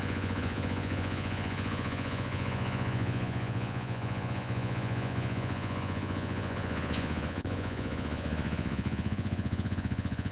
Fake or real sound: fake